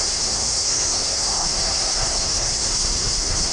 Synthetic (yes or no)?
yes